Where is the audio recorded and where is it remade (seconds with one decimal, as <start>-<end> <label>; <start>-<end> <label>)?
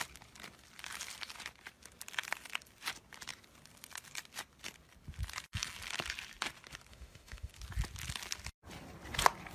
0.0-6.9 recorded; 6.9-7.5 remade; 7.5-9.5 recorded